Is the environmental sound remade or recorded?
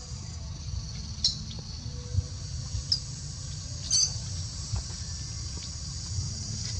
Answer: recorded